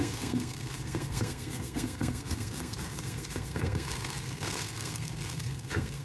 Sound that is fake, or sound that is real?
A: fake